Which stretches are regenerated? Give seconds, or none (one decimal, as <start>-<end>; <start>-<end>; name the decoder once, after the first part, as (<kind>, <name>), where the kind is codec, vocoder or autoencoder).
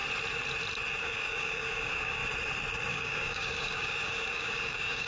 1.0-2.2 (codec, DAC); 2.9-5.1